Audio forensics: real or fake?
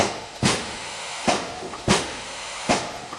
fake